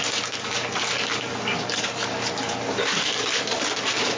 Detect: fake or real fake